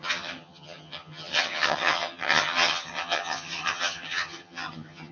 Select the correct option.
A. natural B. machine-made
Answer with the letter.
B